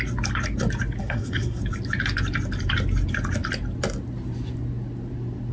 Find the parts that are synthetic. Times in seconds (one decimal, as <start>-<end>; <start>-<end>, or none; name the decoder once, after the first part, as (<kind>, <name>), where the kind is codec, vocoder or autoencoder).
1.0-1.6 (codec, SNAC)